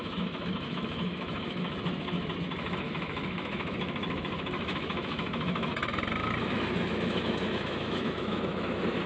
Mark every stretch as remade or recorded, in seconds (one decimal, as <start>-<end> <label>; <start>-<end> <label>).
0.0-5.7 remade; 5.7-6.5 recorded; 6.5-9.1 remade

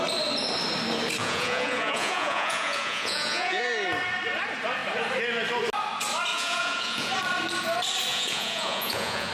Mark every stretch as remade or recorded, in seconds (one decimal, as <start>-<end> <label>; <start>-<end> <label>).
0.0-1.2 recorded; 1.2-3.6 remade; 3.6-6.3 recorded; 6.3-7.1 remade; 7.1-8.1 recorded; 8.1-9.3 remade

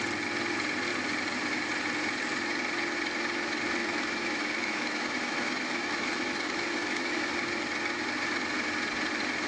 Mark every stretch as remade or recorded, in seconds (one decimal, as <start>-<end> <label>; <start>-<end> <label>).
0.0-3.8 recorded; 3.8-7.3 remade; 7.3-9.5 recorded